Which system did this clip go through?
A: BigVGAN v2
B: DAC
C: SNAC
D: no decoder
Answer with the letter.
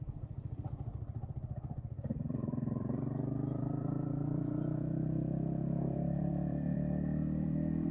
A